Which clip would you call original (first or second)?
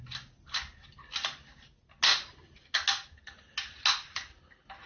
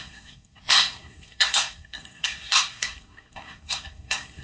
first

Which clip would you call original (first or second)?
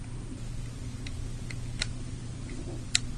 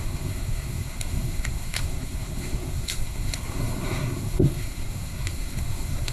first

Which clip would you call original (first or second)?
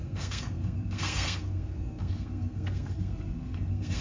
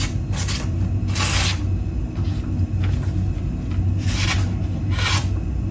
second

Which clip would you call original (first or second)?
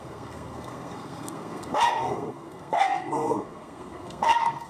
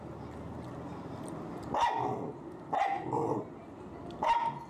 second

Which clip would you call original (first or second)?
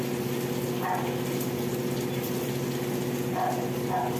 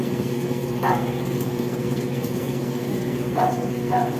first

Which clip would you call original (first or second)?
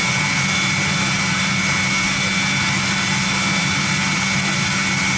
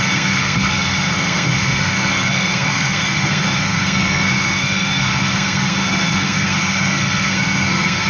first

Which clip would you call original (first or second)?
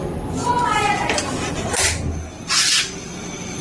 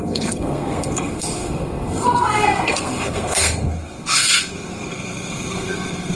first